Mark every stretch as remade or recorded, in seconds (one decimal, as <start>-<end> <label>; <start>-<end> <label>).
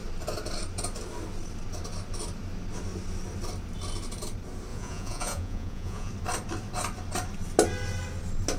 0.0-4.7 recorded; 4.7-6.1 remade; 6.1-8.6 recorded